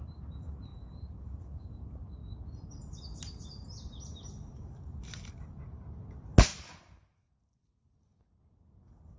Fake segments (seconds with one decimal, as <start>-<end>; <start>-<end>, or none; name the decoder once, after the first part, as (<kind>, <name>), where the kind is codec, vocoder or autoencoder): 0.7-1.7 (vocoder, Vocos)